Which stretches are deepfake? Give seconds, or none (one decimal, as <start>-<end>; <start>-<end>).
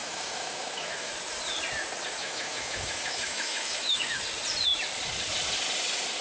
0.0-1.1; 2.2-4.2